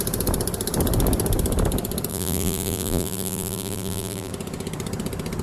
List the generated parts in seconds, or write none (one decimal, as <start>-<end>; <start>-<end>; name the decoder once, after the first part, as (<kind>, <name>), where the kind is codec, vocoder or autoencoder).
2.1-4.3 (vocoder, BigVGAN v2)